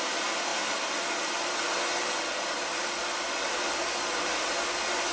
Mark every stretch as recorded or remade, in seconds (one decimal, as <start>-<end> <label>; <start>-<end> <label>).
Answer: 0.0-5.1 recorded